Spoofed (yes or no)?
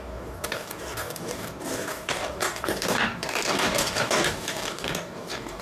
yes